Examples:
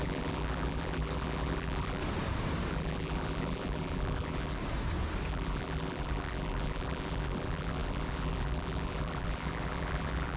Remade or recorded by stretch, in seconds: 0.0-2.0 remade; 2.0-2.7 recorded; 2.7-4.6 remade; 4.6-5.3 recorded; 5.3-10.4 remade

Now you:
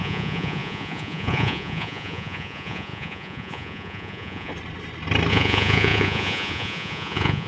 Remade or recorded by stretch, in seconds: 0.0-4.5 remade; 4.5-5.3 recorded; 5.3-7.5 remade

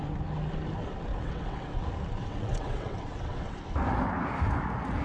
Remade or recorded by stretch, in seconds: 0.0-1.1 recorded; 1.1-1.8 remade; 1.8-2.2 recorded; 2.2-3.6 remade; 3.6-5.0 recorded

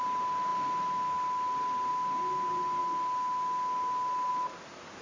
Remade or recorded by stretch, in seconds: 0.0-5.0 recorded

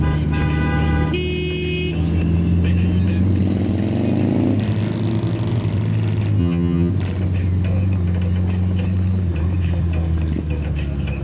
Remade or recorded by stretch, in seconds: 0.0-6.4 recorded; 6.4-6.9 remade; 6.9-11.2 recorded

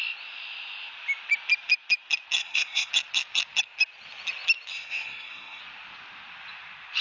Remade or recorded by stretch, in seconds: 0.0-2.4 recorded; 2.4-2.9 remade; 2.9-4.7 recorded; 4.7-5.6 remade; 5.6-7.0 recorded